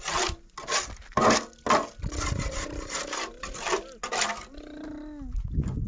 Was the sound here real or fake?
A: real